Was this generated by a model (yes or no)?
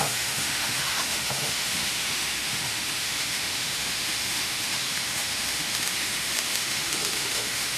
yes